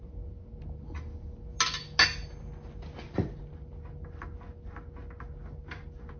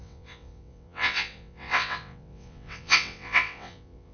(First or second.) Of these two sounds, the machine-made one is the second